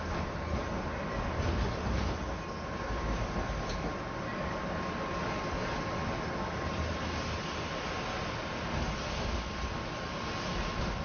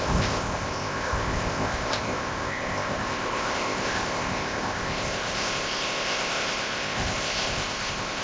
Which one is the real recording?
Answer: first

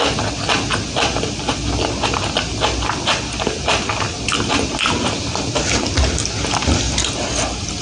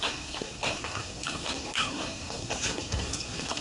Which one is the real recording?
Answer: first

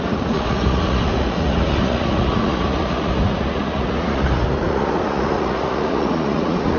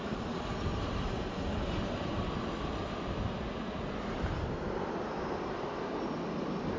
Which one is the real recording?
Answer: second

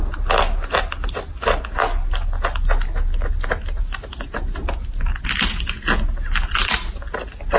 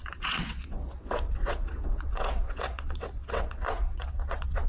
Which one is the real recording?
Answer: first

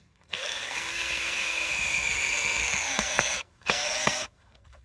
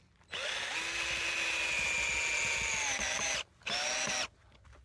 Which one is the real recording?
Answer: second